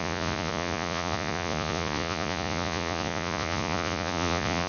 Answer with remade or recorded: remade